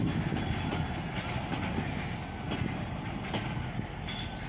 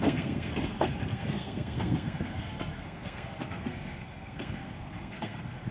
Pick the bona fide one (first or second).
first